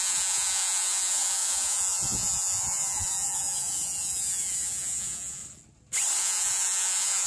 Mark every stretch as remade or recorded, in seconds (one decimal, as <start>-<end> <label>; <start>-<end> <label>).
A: 0.0-5.4 remade; 5.4-6.2 recorded; 6.2-7.3 remade

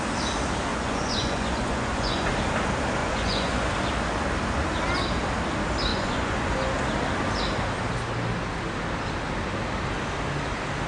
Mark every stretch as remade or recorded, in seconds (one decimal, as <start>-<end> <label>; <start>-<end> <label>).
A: 0.0-0.7 recorded; 0.7-2.3 remade; 2.3-3.0 recorded; 3.0-3.7 remade; 3.7-5.9 recorded; 5.9-6.7 remade; 6.7-10.9 recorded

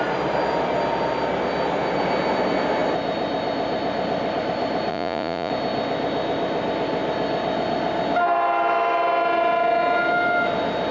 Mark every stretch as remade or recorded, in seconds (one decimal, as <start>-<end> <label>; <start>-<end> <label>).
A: 0.0-4.9 recorded; 4.9-5.5 remade; 5.5-10.9 recorded

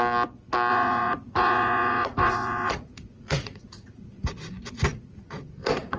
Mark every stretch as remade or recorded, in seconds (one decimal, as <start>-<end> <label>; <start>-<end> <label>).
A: 0.0-0.7 recorded; 0.7-4.3 remade; 4.3-4.9 recorded; 4.9-6.0 remade

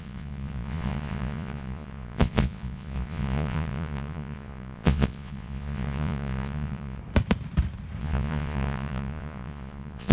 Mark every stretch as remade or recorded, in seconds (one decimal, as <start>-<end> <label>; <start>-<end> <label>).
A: 0.0-7.0 remade; 7.0-8.0 recorded; 8.0-10.1 remade

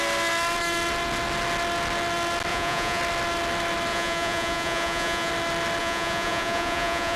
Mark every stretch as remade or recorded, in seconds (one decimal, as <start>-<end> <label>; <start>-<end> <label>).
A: 0.0-2.5 recorded; 2.5-3.0 remade; 3.0-3.9 recorded; 3.9-5.3 remade; 5.3-5.8 recorded; 5.8-7.2 remade

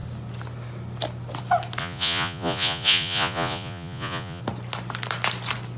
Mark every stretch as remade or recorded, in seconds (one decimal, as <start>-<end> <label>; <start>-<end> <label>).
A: 0.0-1.8 recorded; 1.8-4.4 remade; 4.4-5.8 recorded